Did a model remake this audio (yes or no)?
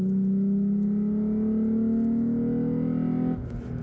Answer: no